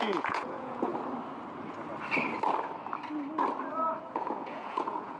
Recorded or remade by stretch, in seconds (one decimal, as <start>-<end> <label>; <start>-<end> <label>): 0.0-0.9 remade; 0.9-4.0 recorded; 4.0-5.2 remade